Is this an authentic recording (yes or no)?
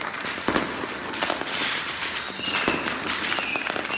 yes